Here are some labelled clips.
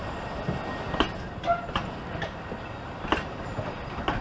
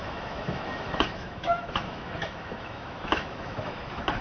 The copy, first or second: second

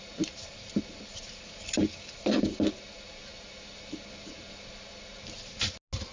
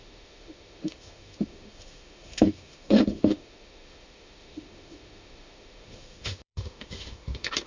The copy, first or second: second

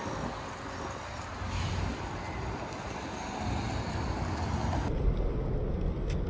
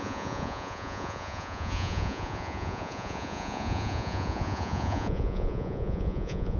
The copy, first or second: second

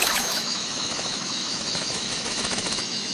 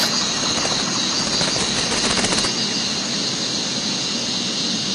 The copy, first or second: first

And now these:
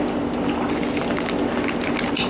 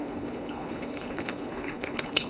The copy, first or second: second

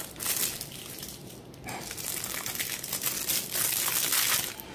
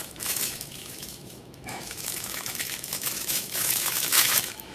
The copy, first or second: second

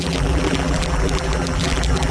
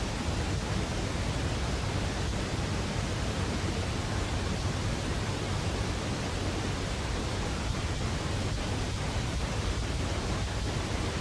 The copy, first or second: first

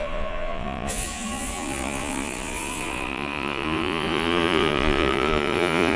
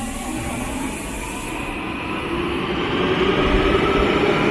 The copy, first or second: first